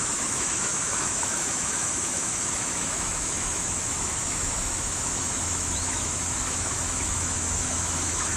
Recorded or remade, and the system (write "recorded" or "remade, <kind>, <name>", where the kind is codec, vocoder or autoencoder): remade, autoencoder, DAC-VAE